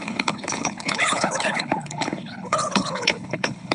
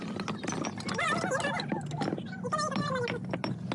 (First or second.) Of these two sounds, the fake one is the first